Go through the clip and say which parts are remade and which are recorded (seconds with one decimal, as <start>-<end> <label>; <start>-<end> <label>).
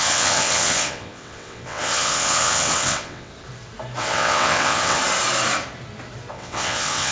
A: 0.0-3.3 remade; 3.3-4.0 recorded; 4.0-5.0 remade; 5.0-6.3 recorded; 6.3-7.1 remade